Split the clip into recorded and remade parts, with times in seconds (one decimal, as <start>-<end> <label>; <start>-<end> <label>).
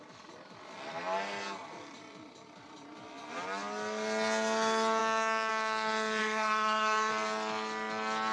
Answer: 0.0-6.2 recorded; 6.2-7.1 remade; 7.1-8.3 recorded